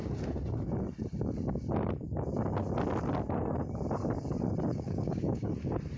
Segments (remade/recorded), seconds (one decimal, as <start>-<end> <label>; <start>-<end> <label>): 0.0-4.7 recorded; 4.7-5.5 remade; 5.5-6.0 recorded